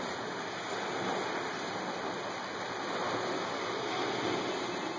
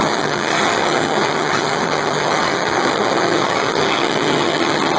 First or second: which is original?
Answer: first